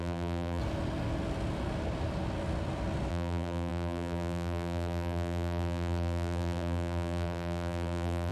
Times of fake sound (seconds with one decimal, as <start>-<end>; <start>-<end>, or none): 0.0-0.6; 3.1-8.3